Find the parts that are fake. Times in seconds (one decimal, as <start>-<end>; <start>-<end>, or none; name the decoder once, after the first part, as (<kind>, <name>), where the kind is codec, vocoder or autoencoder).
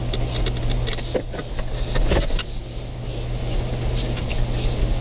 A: none